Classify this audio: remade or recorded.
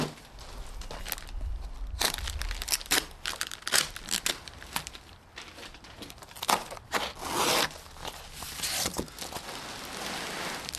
recorded